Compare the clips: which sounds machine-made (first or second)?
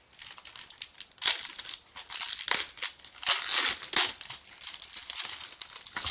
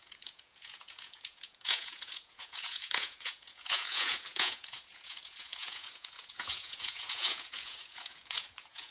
second